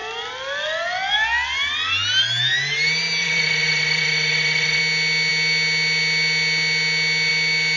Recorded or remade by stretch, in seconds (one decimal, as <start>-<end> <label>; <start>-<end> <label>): 0.0-3.2 recorded; 3.2-4.8 remade; 4.8-7.8 recorded